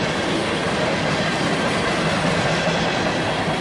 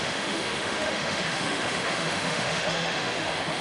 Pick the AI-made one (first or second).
second